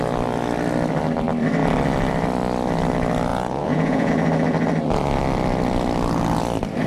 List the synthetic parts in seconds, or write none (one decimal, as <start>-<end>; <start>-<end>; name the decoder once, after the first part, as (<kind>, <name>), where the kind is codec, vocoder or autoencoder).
3.3-4.1 (vocoder, Vocos)